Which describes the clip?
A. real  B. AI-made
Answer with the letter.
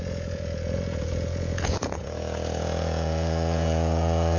B